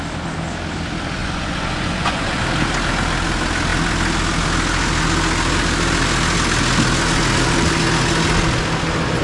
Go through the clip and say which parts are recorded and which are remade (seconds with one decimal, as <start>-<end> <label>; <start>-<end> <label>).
0.0-1.2 recorded; 1.2-2.4 remade; 2.4-9.2 recorded